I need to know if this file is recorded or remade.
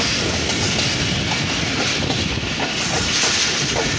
recorded